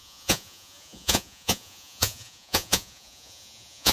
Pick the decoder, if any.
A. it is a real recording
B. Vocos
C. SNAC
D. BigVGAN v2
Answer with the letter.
B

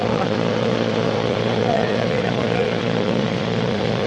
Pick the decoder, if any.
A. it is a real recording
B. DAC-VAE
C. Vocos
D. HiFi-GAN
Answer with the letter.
C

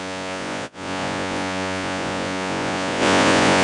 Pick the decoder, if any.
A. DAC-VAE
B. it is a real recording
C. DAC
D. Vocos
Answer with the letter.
D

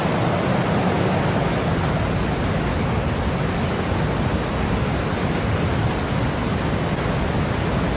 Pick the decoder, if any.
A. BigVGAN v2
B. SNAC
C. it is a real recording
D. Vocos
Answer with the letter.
C